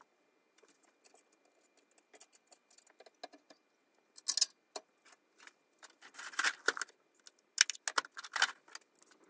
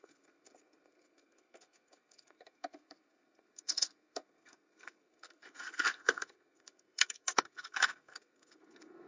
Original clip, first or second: first